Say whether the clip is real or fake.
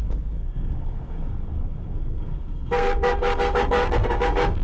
fake